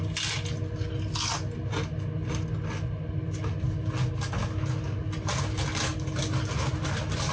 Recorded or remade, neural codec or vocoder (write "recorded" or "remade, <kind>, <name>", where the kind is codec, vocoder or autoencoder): recorded